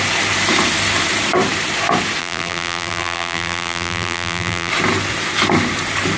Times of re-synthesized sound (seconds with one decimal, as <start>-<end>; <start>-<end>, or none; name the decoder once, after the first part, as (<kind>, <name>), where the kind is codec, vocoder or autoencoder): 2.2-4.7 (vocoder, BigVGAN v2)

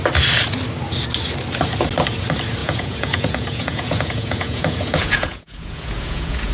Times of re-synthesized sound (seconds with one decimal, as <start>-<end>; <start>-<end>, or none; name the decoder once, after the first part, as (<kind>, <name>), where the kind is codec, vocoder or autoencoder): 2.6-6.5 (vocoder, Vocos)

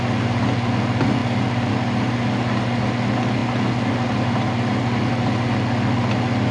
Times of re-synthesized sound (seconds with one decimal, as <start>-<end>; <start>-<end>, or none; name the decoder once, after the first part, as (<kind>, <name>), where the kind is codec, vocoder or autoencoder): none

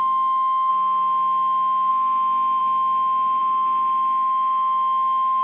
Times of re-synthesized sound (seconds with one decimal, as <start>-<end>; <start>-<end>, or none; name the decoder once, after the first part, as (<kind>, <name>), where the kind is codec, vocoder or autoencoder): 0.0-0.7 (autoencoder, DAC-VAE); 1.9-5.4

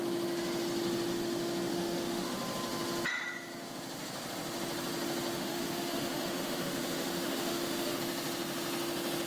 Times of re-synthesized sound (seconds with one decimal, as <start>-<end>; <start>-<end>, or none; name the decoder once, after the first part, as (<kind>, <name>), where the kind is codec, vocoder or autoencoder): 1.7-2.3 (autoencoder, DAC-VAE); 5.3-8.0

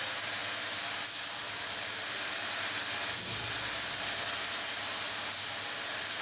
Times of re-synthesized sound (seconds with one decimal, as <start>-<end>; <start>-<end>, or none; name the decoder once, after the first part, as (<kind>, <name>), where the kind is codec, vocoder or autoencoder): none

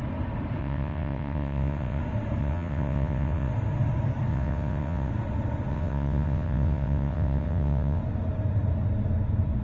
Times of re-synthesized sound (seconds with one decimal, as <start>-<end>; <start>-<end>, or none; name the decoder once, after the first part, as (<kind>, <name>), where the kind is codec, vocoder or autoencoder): 0.6-2.0 (vocoder, WaveNeXt); 2.4-3.5; 4.3-5.1; 5.7-8.0

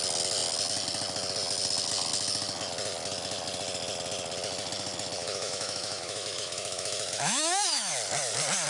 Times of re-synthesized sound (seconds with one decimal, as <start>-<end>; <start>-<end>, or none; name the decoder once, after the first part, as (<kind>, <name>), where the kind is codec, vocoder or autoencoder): 5.2-7.9 (autoencoder, DAC-VAE)